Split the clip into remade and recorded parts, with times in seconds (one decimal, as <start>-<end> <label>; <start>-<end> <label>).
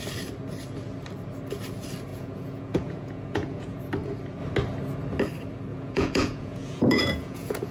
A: 0.0-2.1 recorded; 2.1-3.8 remade; 3.8-5.7 recorded; 5.7-7.7 remade